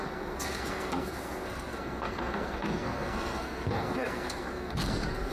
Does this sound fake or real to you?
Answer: fake